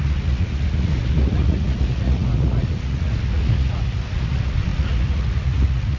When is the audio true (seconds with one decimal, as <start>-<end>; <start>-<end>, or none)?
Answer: none